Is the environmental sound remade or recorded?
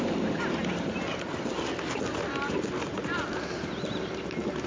recorded